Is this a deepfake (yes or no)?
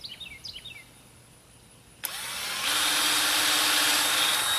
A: no